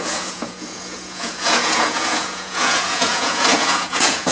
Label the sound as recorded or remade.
remade